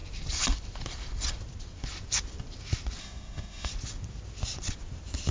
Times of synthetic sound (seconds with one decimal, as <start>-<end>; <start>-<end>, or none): 3.0-3.7